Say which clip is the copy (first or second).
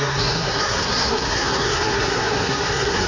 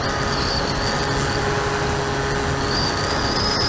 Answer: first